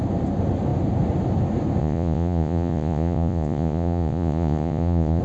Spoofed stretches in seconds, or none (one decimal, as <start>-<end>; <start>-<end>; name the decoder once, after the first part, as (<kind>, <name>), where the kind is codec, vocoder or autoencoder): 1.8-5.2 (vocoder, Vocos)